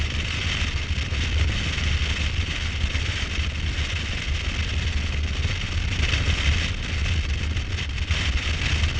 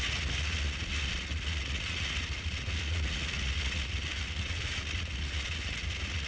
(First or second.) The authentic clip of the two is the first